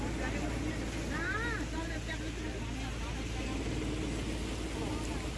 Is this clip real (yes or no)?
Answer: yes